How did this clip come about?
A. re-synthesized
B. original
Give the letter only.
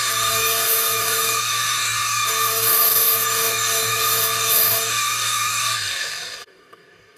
A